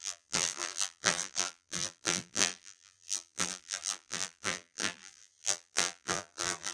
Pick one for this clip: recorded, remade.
remade